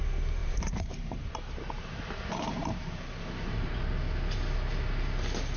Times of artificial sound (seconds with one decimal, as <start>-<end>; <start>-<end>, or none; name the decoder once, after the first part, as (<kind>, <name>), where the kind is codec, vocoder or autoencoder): 0.4-3.8 (vocoder, BigVGAN v2)

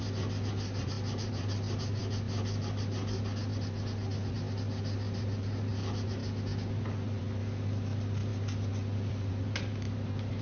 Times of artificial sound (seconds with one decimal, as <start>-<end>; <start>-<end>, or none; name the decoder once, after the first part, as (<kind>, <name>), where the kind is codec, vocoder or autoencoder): none

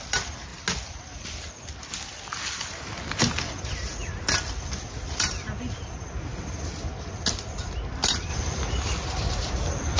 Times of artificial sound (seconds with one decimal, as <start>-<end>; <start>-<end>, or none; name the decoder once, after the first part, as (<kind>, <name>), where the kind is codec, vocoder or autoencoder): none

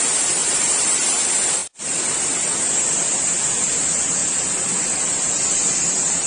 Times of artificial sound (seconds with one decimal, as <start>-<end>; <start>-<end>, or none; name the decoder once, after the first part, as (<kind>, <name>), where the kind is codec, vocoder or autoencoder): 0.4-1.2 (vocoder, BigVGAN v2); 1.6-3.3